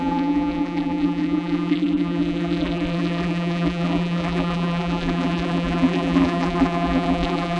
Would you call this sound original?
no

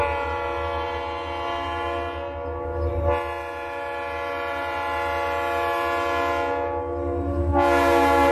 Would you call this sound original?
yes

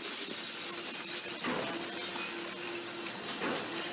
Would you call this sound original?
yes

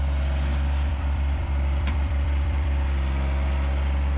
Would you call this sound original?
no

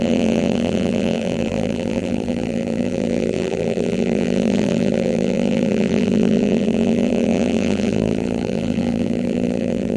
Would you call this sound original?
no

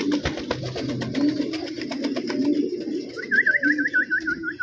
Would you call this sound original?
yes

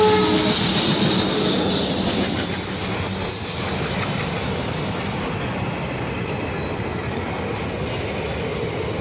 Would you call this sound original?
yes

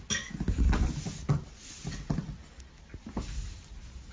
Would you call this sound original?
yes